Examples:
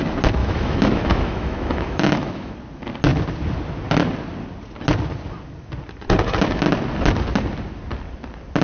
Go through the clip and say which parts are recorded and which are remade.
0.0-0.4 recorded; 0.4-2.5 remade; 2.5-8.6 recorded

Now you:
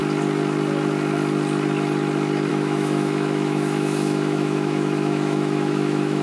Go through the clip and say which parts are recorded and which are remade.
0.0-2.5 recorded; 2.5-6.2 remade

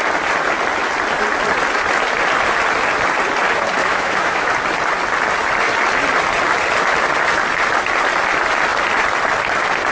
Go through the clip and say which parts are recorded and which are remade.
0.0-3.8 recorded; 3.8-4.5 remade; 4.5-9.9 recorded

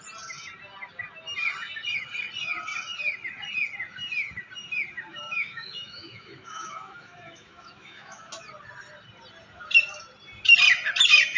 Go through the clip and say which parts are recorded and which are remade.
0.0-5.1 recorded; 5.1-8.3 remade; 8.3-11.4 recorded